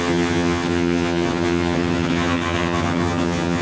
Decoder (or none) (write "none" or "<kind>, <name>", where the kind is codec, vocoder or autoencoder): vocoder, HiFi-GAN